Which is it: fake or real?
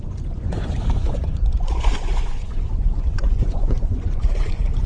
fake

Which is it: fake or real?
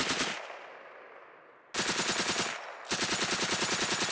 real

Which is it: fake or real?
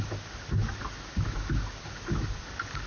real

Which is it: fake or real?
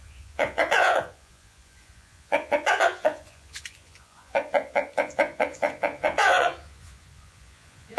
fake